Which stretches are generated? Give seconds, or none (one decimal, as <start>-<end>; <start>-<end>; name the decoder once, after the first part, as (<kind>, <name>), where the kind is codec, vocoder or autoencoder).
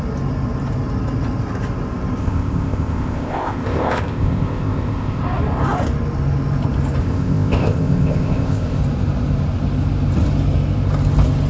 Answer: 2.2-5.2 (codec, ZipCodec); 7.0-8.8